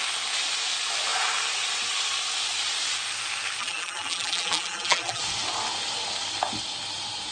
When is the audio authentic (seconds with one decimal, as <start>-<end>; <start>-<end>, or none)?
0.0-3.6; 5.2-7.3